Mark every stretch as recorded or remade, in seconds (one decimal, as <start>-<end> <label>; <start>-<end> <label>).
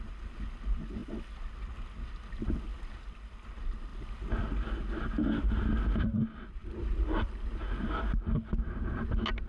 0.0-9.5 recorded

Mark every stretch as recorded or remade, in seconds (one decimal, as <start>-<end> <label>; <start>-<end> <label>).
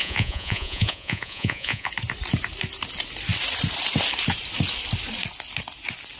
0.0-1.9 remade; 1.9-6.2 recorded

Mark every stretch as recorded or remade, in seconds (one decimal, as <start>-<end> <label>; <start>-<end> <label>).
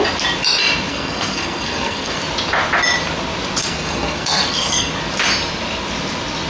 0.0-0.9 recorded; 0.9-2.2 remade; 2.2-3.6 recorded; 3.6-4.9 remade; 4.9-6.5 recorded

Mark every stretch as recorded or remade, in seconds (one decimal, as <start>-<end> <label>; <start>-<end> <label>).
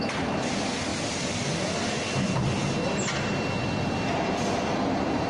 0.0-5.3 recorded